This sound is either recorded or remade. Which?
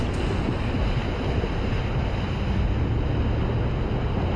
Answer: recorded